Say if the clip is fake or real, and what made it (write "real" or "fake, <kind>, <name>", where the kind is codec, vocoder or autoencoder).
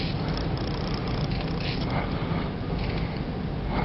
real